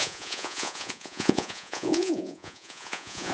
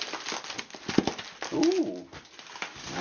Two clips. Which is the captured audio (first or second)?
second